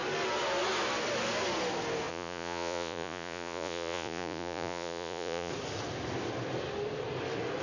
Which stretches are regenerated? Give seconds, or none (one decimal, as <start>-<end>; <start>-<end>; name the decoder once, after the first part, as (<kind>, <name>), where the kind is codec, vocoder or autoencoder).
2.1-5.5 (vocoder, Vocos)